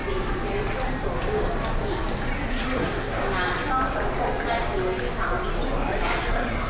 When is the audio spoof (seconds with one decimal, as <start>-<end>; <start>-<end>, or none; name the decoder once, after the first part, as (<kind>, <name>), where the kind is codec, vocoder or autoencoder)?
2.5-3.2 (codec, SNAC); 6.3-6.7